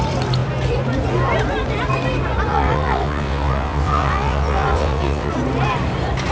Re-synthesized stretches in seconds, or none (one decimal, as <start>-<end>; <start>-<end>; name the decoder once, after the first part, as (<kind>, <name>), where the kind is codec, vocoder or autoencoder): 2.5-5.3 (vocoder, WaveNeXt)